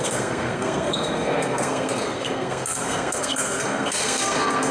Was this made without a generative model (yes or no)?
no